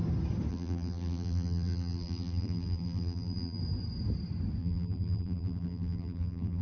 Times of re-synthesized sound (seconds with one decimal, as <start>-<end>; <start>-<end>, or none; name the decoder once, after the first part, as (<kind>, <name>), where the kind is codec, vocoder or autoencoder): 0.5-3.6 (vocoder, BigVGAN v2); 4.6-6.6